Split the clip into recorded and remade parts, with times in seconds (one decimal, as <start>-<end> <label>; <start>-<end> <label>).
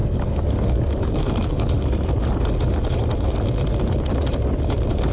0.0-1.7 remade; 1.7-5.1 recorded